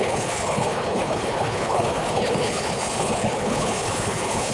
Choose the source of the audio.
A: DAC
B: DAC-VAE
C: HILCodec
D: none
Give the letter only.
C